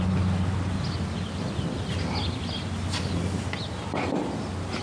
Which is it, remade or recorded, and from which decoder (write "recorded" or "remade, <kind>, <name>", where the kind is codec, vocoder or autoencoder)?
recorded